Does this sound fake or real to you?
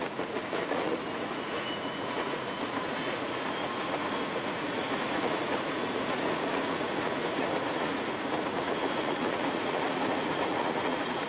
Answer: fake